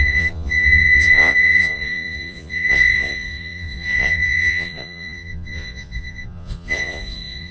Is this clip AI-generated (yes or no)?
yes